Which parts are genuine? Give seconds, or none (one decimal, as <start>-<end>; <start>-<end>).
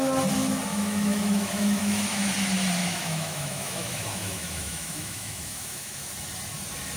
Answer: 0.0-0.7; 2.3-2.8; 6.1-7.0